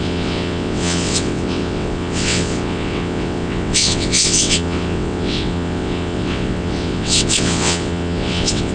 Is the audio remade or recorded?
remade